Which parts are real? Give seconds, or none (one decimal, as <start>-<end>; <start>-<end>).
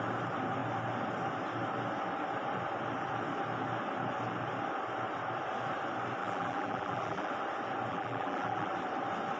0.0-6.2; 7.3-7.9; 8.7-9.4